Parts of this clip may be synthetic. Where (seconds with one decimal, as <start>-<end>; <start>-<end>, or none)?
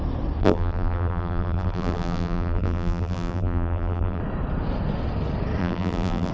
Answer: 0.4-4.2; 5.6-6.3